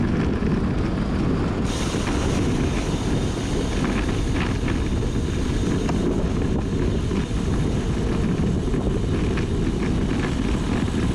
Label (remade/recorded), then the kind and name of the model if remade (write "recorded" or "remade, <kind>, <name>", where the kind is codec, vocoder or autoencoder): recorded